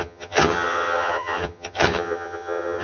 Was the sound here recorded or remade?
remade